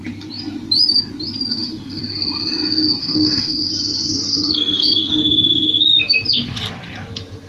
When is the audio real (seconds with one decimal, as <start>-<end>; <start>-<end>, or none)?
0.0-1.5; 2.0-3.0; 3.7-4.3; 5.1-7.5

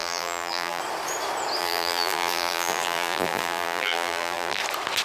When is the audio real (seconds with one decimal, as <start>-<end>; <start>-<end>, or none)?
0.8-1.6; 4.6-5.0